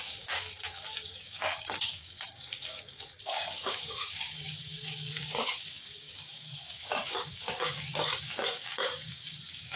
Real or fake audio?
fake